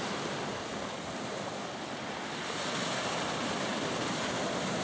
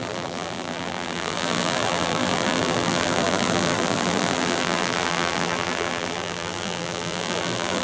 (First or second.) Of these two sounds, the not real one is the second